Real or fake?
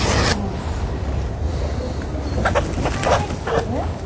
real